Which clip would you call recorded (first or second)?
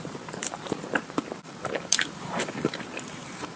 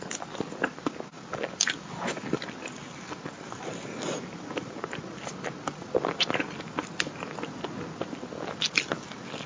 second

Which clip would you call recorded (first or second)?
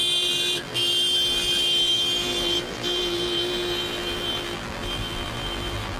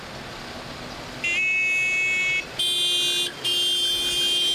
second